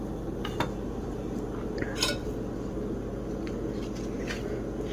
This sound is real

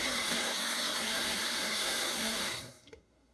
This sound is fake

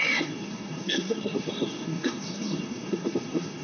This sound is fake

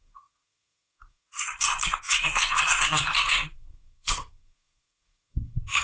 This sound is fake